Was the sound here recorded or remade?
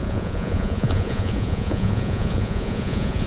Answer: remade